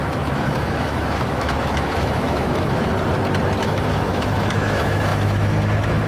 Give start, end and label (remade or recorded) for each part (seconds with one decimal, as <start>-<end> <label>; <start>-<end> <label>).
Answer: 0.0-2.9 remade; 2.9-3.6 recorded; 3.6-6.1 remade

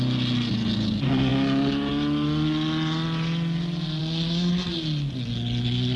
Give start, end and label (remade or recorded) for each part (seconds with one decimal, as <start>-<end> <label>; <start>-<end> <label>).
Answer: 0.0-6.0 recorded

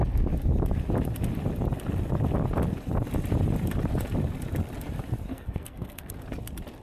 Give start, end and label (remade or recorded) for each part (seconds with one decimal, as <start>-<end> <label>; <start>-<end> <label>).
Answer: 0.0-5.3 recorded; 5.3-6.1 remade; 6.1-6.8 recorded

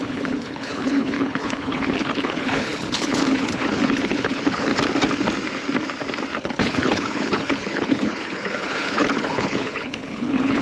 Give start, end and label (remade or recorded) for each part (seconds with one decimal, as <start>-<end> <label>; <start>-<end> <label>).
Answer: 0.0-4.7 remade; 4.7-6.4 recorded; 6.4-10.6 remade